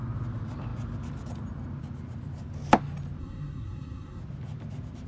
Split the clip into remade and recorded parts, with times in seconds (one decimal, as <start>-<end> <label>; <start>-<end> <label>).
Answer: 0.0-3.2 recorded; 3.2-4.2 remade; 4.2-5.1 recorded